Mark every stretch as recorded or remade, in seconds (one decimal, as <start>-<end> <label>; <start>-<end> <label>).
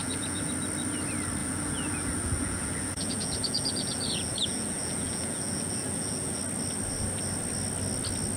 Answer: 0.0-0.5 remade; 0.5-1.4 recorded; 1.4-6.4 remade; 6.4-8.4 recorded